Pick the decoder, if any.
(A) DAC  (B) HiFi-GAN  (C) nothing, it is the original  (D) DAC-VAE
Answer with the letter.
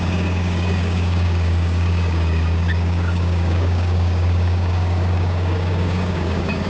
A